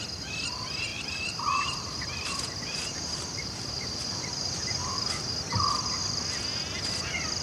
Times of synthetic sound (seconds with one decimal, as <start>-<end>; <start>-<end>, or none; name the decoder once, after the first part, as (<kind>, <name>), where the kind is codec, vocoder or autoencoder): 0.9-5.3 (vocoder, BigVGAN v2)